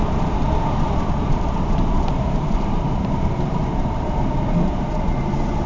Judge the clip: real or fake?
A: fake